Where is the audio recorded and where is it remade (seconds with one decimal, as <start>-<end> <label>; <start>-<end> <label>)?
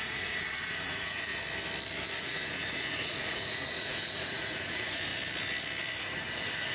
0.0-1.3 remade; 1.3-2.2 recorded; 2.2-5.1 remade; 5.1-6.0 recorded; 6.0-6.7 remade